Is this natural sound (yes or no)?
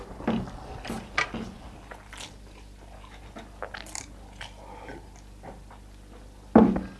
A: yes